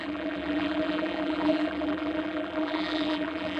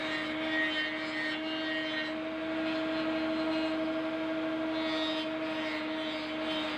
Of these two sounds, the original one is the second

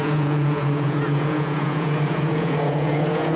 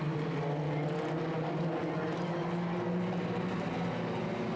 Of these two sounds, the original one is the second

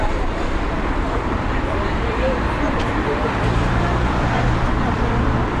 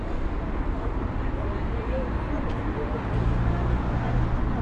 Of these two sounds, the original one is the second